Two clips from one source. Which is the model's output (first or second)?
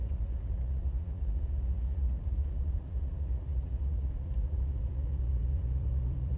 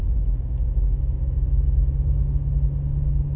first